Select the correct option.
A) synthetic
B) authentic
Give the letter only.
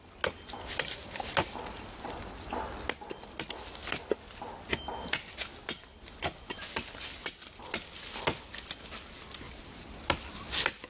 B